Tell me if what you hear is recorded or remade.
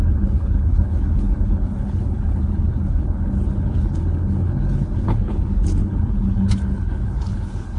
remade